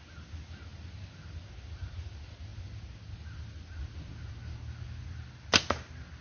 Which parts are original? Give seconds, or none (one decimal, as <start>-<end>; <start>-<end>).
0.0-6.2